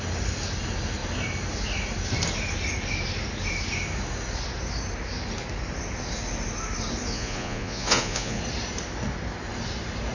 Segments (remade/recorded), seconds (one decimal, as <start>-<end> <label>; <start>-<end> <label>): 0.0-7.1 recorded; 7.1-8.4 remade; 8.4-10.1 recorded